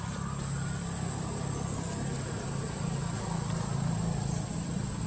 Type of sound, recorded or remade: recorded